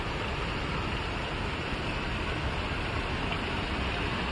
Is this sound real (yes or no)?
yes